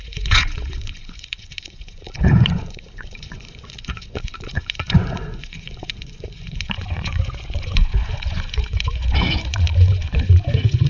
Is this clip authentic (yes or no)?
no